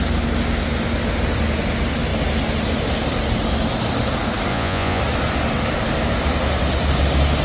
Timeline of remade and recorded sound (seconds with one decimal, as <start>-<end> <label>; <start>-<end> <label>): 0.0-4.5 recorded; 4.5-5.0 remade; 5.0-7.4 recorded